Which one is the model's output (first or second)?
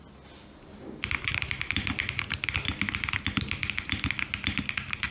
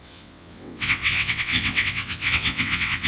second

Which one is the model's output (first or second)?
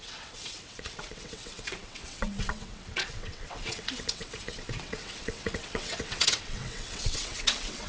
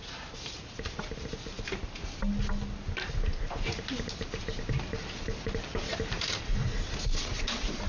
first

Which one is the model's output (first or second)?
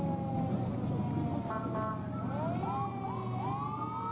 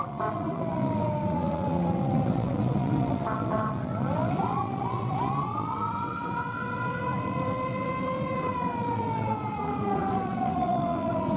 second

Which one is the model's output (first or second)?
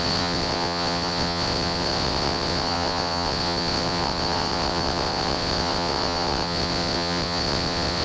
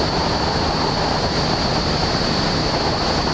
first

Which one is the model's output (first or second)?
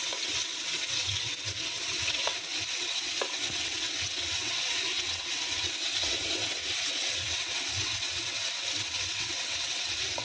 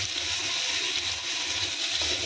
first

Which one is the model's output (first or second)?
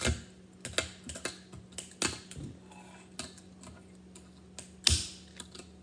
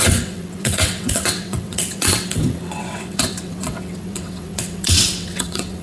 second